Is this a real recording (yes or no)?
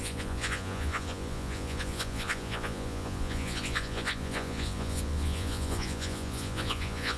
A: no